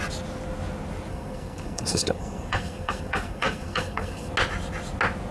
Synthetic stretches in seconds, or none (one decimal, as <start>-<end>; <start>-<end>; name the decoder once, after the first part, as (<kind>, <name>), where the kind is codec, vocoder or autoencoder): 1.1-4.3 (codec, SNAC)